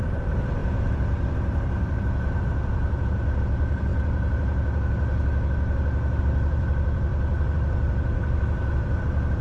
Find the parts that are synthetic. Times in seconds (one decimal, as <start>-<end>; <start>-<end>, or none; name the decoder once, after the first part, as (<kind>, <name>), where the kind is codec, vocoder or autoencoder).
0.0-0.6 (vocoder, BigVGAN v2); 2.4-3.9; 6.2-9.4